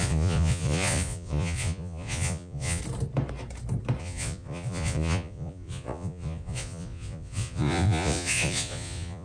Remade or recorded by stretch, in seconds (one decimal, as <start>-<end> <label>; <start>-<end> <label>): 0.0-2.8 remade; 2.8-4.0 recorded; 4.0-9.2 remade